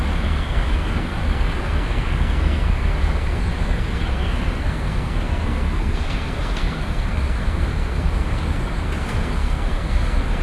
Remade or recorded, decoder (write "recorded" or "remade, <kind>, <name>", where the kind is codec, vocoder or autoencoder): remade, codec, SNAC